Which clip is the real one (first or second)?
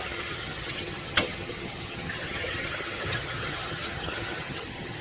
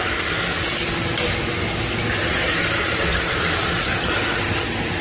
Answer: second